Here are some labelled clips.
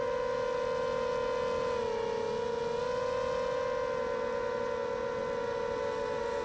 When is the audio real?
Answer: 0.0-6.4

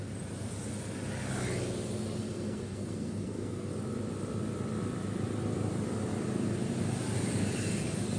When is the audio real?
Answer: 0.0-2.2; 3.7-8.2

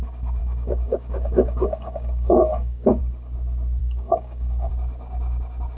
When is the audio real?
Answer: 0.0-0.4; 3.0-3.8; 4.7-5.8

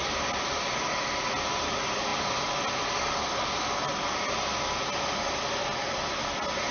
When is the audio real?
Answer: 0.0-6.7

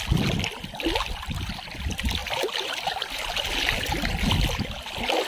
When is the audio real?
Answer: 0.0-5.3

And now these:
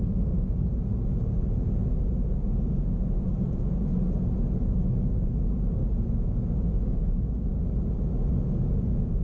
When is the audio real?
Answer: 3.9-5.1; 5.8-8.3